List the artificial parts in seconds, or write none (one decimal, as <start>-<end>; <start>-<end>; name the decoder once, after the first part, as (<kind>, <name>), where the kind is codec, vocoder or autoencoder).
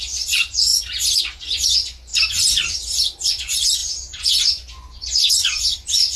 0.0-0.7 (vocoder, Vocos); 1.2-2.1; 3.3-6.2